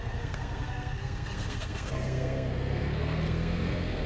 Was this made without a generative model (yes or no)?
no